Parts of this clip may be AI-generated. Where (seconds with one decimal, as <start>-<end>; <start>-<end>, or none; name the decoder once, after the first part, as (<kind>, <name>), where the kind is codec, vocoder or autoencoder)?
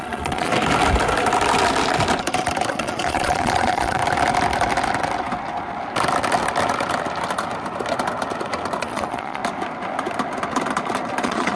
0.0-0.5 (vocoder, Vocos); 2.7-4.0; 8.8-9.4; 11.2-11.6